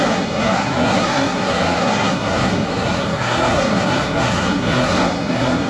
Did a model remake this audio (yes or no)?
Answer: yes